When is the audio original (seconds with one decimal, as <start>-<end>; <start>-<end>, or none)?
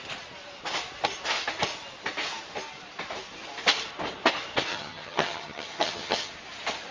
0.0-4.7; 6.3-6.9